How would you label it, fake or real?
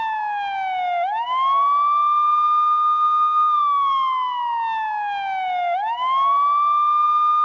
real